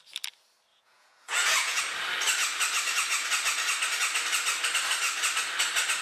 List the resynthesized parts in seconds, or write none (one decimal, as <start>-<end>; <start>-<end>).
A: 0.7-1.8